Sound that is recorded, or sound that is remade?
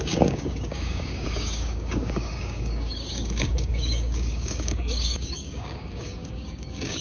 remade